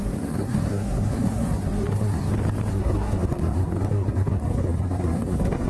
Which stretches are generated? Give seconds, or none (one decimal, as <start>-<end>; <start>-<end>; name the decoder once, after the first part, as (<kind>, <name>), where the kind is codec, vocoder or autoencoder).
0.0-2.3 (codec, SNAC); 2.7-5.7